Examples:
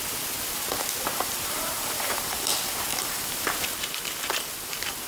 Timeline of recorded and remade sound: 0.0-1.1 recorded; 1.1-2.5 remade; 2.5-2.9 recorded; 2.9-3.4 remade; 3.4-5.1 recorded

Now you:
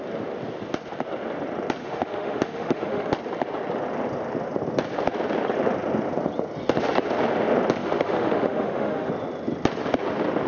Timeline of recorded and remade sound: 0.0-1.8 recorded; 1.8-3.1 remade; 3.1-7.8 recorded; 7.8-9.1 remade; 9.1-10.5 recorded

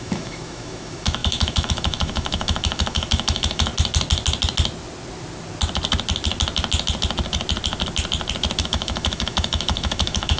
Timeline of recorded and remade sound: 0.0-3.7 remade; 3.7-8.6 recorded; 8.6-10.4 remade

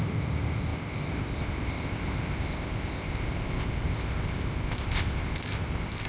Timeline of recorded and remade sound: 0.0-6.1 remade